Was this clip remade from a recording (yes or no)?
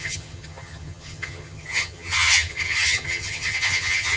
yes